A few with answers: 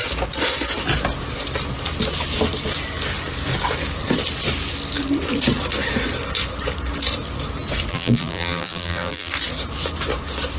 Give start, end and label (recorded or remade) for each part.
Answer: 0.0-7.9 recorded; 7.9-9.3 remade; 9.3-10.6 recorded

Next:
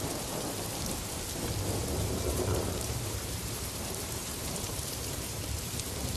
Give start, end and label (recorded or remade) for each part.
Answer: 0.0-2.0 recorded; 2.0-5.7 remade; 5.7-6.2 recorded